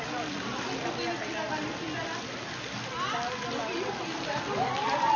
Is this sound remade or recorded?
recorded